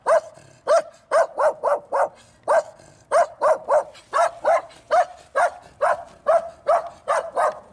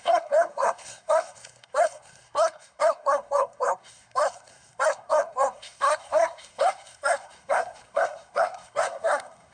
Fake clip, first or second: second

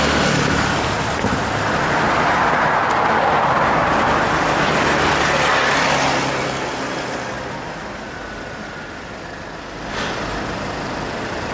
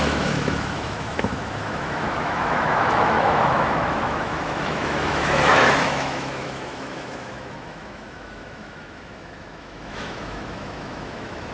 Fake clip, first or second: second